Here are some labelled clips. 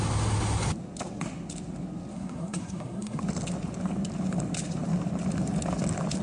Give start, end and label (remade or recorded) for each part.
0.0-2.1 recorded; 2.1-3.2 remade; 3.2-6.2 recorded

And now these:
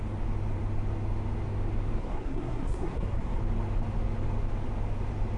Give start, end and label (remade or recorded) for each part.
0.0-2.0 recorded; 2.0-3.4 remade; 3.4-5.4 recorded

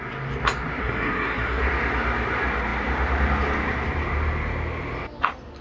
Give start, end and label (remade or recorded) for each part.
0.0-0.8 recorded; 0.8-1.6 remade; 1.6-5.6 recorded